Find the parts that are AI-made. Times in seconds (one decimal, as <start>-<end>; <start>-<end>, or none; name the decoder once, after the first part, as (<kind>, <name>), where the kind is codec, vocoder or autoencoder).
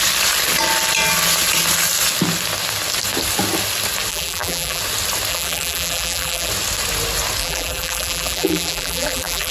4.1-4.8 (vocoder, BigVGAN v2); 5.3-6.5; 7.4-9.5